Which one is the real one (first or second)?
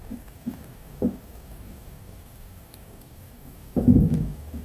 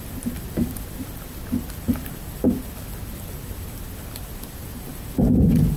second